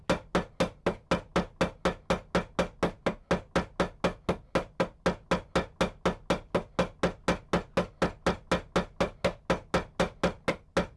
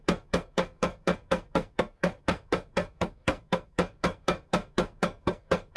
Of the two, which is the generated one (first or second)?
second